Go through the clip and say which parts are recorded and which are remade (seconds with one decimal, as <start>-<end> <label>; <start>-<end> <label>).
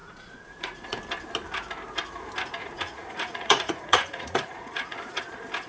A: 0.0-1.0 remade; 1.0-2.6 recorded; 2.6-5.2 remade; 5.2-5.7 recorded